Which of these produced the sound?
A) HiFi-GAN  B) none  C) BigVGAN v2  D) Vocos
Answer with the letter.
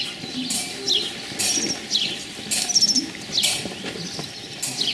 B